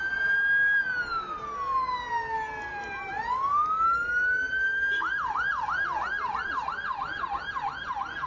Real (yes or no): yes